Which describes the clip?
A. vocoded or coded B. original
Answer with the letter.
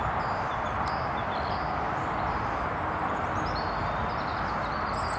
B